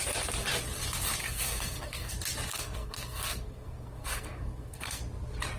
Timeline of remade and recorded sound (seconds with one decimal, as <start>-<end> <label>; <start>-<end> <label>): 0.0-1.2 recorded; 1.2-2.1 remade; 2.1-2.5 recorded; 2.5-5.0 remade; 5.0-5.6 recorded